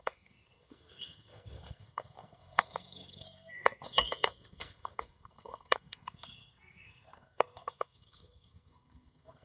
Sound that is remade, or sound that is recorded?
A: remade